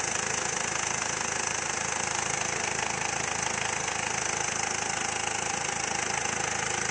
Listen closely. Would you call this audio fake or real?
real